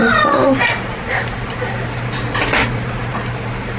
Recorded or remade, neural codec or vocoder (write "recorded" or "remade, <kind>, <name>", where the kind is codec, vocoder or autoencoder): recorded